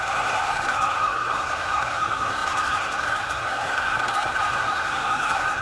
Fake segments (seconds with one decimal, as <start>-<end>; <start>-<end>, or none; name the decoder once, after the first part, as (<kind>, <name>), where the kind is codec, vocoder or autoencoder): 0.0-5.6 (codec, SNAC)